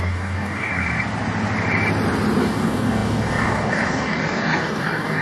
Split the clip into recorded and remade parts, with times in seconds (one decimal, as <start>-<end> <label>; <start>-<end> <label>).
0.0-0.7 remade; 0.7-2.4 recorded; 2.4-5.2 remade